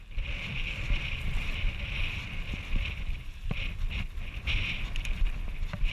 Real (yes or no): yes